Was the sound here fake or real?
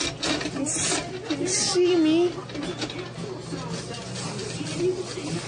real